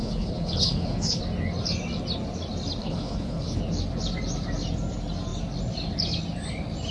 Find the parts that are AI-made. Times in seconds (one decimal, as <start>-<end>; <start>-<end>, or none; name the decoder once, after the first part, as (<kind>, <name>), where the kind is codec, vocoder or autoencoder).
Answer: 0.0-1.2 (codec, HILCodec); 2.8-3.6